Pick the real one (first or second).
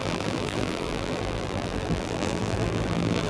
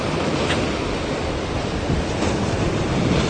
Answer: second